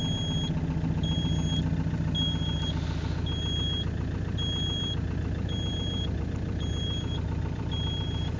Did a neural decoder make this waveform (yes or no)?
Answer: no